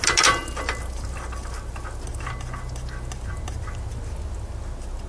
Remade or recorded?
recorded